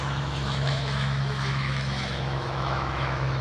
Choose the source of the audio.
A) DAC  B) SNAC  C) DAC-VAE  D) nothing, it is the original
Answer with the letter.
C